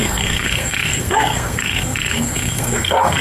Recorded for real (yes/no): no